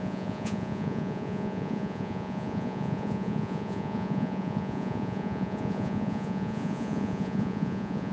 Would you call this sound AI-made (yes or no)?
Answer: yes